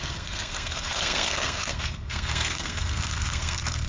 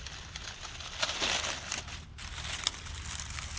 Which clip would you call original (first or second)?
second